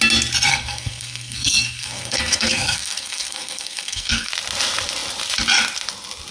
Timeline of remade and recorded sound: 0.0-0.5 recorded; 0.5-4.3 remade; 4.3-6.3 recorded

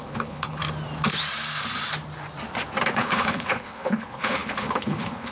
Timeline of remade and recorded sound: 0.0-0.6 remade; 0.6-2.9 recorded; 2.9-5.3 remade

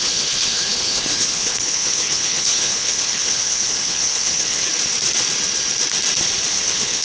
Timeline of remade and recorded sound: 0.0-4.7 remade; 4.7-6.5 recorded; 6.5-7.0 remade

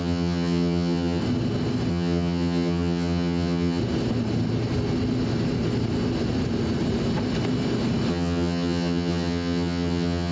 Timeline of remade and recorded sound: 0.0-1.2 remade; 1.2-1.9 recorded; 1.9-3.8 remade; 3.8-8.1 recorded; 8.1-10.3 remade

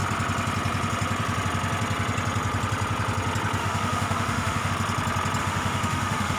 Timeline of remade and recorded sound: 0.0-3.6 recorded; 3.6-4.7 remade; 4.7-5.4 recorded; 5.4-6.4 remade

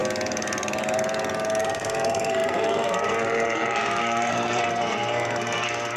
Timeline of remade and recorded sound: 0.0-1.6 recorded; 1.6-6.0 remade

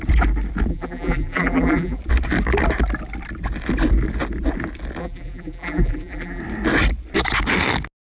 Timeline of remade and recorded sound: 0.0-0.7 recorded; 0.7-2.0 remade; 2.0-5.0 recorded; 5.0-6.4 remade; 6.4-8.0 recorded

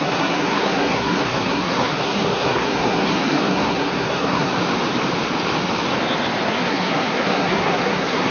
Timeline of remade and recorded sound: 0.0-4.5 remade; 4.5-6.5 recorded; 6.5-8.3 remade